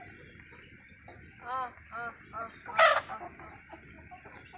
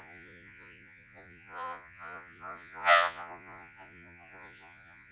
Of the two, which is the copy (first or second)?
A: second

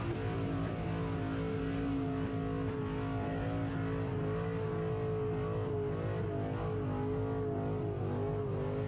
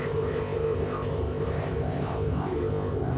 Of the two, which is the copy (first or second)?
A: second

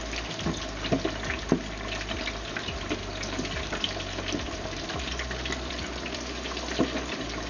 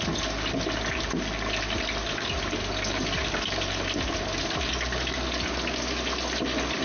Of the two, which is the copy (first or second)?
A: first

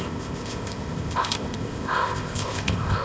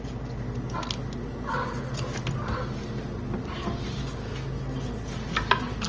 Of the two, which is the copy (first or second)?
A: first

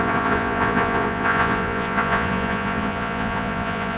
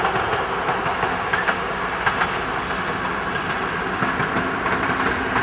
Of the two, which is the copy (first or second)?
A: first